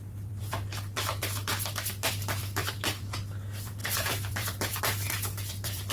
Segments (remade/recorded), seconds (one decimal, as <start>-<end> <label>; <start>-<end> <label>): 0.0-1.5 remade; 1.5-2.1 recorded; 2.1-5.9 remade